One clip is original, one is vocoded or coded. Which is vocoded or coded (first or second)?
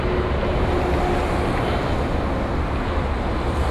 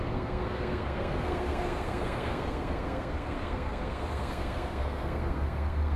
second